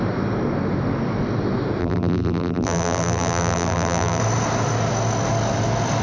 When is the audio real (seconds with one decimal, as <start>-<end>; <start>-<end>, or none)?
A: 0.0-1.8; 4.2-6.0